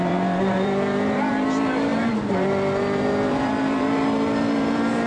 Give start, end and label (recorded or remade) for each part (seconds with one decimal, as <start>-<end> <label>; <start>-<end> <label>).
0.0-5.1 remade